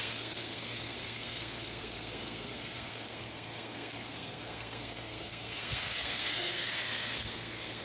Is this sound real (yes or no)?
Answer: no